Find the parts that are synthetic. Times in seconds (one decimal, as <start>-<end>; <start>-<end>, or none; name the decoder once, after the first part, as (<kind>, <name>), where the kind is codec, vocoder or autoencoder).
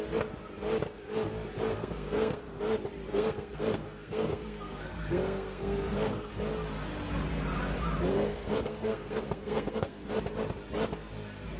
1.7-2.6 (codec, SNAC); 3.1-6.3; 8.1-10.1